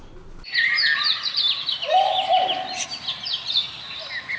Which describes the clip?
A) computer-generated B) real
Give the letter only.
B